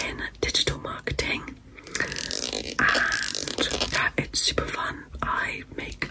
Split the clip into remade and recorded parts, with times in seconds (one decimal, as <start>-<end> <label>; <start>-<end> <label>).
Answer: 0.0-6.1 recorded